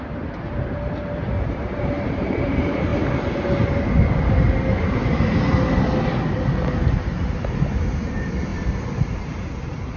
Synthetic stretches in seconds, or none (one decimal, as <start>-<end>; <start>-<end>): 0.0-2.9; 7.6-10.0